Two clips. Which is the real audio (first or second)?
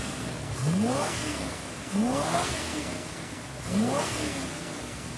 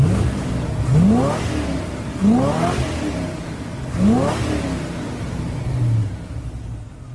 second